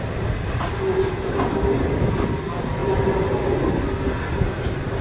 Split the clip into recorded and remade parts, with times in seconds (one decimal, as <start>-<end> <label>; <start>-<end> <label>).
0.0-5.0 recorded